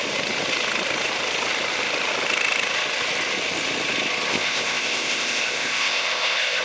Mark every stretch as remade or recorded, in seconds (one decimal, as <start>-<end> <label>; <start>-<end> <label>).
0.0-4.3 recorded; 4.3-6.6 remade